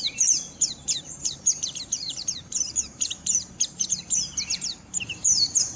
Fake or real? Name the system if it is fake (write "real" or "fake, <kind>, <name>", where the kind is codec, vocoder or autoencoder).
fake, vocoder, BigVGAN v2